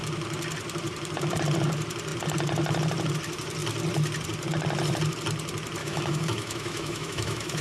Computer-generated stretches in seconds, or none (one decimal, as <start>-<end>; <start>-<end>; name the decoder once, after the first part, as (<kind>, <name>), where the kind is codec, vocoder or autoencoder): 5.8-7.6 (autoencoder, DAC-VAE)